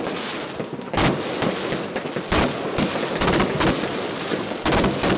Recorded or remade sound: recorded